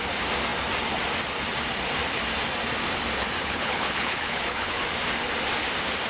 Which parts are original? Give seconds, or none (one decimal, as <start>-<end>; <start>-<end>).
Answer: 0.0-3.4; 4.8-6.1